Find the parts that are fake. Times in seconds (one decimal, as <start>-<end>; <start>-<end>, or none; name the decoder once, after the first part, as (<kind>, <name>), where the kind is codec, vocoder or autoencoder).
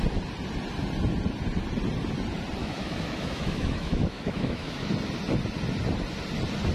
2.6-4.9 (autoencoder, DAC-VAE)